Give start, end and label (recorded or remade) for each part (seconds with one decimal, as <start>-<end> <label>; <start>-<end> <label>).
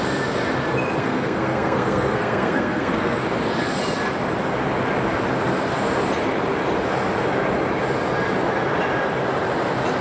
0.0-1.0 recorded; 1.0-3.2 remade; 3.2-10.0 recorded